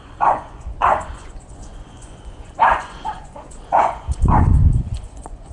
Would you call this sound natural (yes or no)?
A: no